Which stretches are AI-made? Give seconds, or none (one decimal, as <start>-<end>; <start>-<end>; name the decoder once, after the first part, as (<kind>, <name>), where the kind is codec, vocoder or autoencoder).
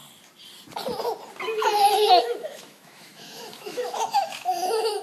2.1-5.0 (autoencoder, DAC-VAE)